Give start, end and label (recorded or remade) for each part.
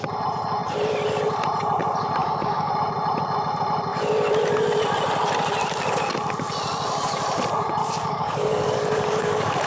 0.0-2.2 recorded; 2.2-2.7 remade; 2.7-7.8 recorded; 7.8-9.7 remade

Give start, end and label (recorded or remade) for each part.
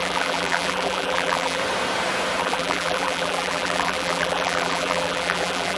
0.0-1.6 remade; 1.6-2.4 recorded; 2.4-5.8 remade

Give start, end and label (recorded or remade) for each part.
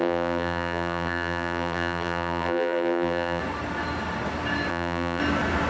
0.0-3.4 remade; 3.4-4.7 recorded; 4.7-5.2 remade; 5.2-5.7 recorded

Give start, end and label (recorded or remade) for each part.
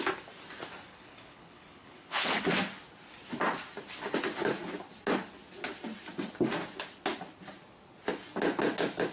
0.0-0.9 recorded; 0.9-2.4 remade; 2.4-9.1 recorded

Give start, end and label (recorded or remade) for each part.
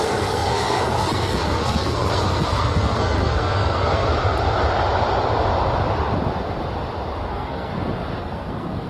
0.0-4.1 remade; 4.1-7.3 recorded; 7.3-7.7 remade; 7.7-8.2 recorded; 8.2-8.9 remade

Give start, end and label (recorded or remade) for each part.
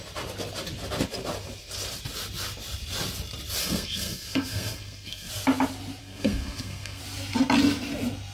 0.0-3.6 recorded; 3.6-5.3 remade; 5.3-6.0 recorded; 6.0-7.0 remade; 7.0-8.3 recorded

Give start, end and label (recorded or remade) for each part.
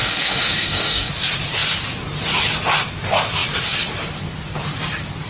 0.0-1.1 remade; 1.1-5.3 recorded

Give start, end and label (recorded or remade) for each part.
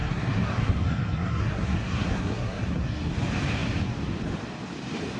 0.0-3.1 remade; 3.1-5.2 recorded